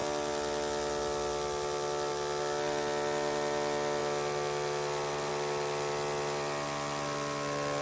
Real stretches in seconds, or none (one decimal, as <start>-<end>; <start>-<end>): 0.0-7.8